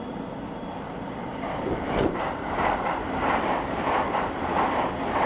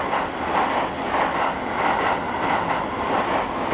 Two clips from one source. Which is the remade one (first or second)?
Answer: first